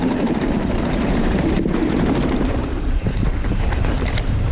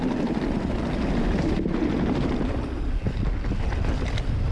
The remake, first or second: first